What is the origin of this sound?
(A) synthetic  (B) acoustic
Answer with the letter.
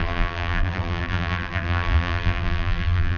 A